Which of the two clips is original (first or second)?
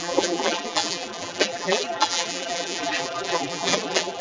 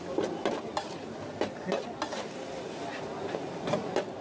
second